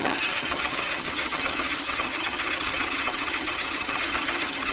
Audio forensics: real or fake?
fake